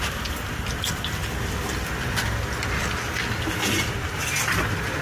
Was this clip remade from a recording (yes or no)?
no